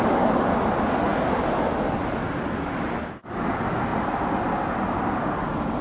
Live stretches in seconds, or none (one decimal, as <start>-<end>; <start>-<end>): 0.0-5.8